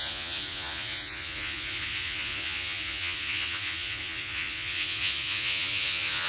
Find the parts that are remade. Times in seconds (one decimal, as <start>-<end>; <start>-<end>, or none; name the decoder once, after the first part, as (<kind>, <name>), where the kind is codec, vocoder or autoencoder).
0.0-6.3 (vocoder, Vocos)